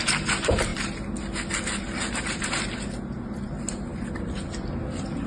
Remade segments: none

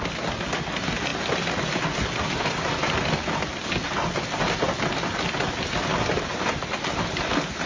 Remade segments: none

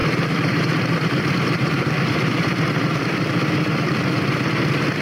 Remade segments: 0.0-3.0 (vocoder, BigVGAN v2)

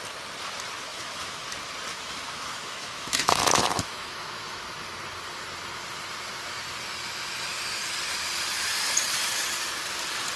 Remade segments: 0.9-1.4 (autoencoder, DAC-VAE); 1.9-4.6

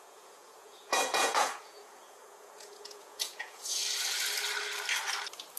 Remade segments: 0.0-3.8 (vocoder, Vocos)

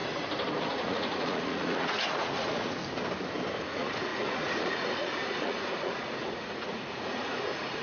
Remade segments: 0.5-2.8 (vocoder, Vocos); 3.6-7.8